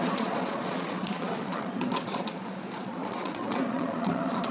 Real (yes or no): no